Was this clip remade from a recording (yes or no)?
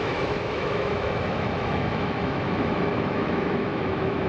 yes